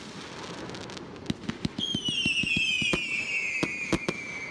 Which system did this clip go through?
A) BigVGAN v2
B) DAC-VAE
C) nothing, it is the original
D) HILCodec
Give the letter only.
C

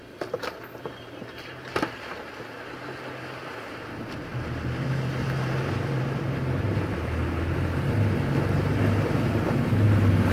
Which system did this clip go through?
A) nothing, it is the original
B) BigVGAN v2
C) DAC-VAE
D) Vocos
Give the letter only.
A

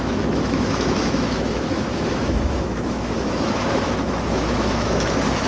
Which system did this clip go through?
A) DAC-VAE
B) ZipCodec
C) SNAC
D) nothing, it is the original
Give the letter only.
A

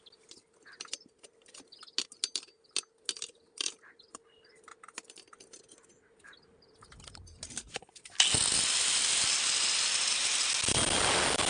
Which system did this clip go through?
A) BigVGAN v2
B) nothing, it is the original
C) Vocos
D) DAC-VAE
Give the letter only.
B